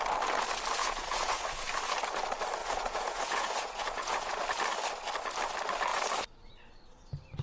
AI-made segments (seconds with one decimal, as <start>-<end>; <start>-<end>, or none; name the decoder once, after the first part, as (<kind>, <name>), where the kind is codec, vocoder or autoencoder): 0.8-1.6 (vocoder, Vocos); 2.6-4.4